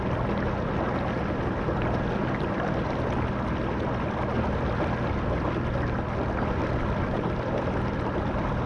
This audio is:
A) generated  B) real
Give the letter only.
B